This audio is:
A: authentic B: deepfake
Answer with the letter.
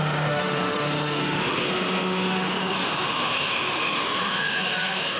B